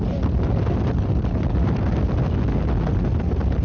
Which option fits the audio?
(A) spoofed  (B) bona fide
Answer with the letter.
B